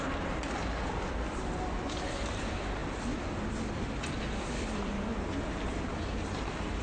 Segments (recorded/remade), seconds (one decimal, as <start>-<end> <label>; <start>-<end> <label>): 0.0-6.8 recorded